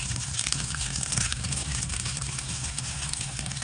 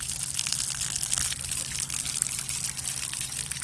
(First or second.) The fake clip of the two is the first